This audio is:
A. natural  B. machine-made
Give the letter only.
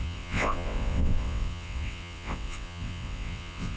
B